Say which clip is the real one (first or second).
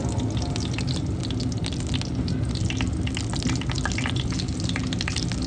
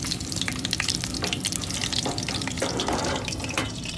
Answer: first